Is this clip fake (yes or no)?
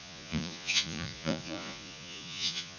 yes